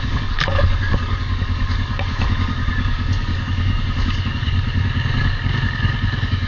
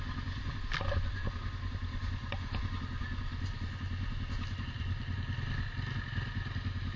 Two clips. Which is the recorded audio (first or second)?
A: second